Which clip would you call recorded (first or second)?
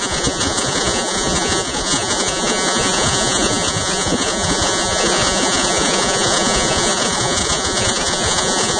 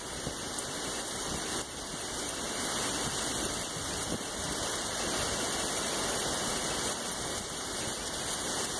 second